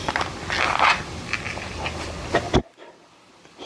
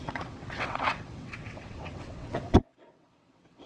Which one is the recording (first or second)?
first